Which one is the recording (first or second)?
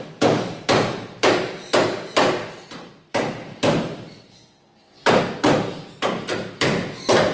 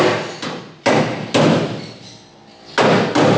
second